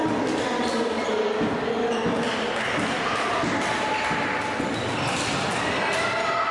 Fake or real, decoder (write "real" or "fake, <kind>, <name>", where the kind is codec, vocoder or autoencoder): real